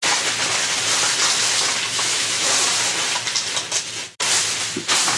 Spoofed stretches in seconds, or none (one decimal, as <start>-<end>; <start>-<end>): 1.9-2.5